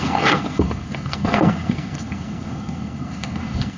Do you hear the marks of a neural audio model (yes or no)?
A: yes